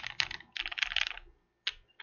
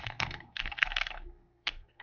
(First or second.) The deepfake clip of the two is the second